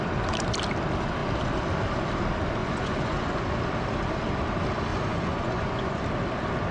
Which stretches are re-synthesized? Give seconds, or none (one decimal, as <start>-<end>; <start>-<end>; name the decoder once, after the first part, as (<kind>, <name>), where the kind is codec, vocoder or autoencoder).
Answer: 2.6-3.6 (vocoder, Vocos); 4.9-6.0